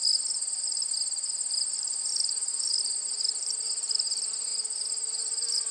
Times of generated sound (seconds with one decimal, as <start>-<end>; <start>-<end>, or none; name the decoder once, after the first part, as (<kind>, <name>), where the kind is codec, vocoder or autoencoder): none